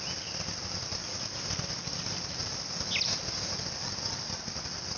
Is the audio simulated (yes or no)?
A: no